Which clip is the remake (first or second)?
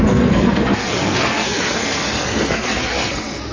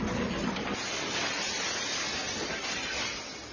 first